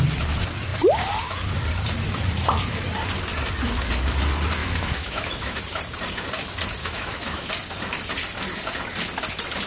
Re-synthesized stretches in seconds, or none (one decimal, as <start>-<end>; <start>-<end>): 4.6-5.6; 6.8-7.5